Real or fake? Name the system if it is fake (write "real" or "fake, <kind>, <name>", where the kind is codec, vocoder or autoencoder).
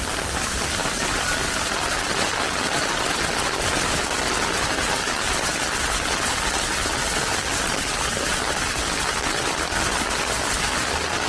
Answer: real